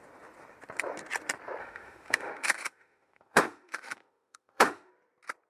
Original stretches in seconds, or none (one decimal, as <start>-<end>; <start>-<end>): 0.0-1.6; 4.9-5.5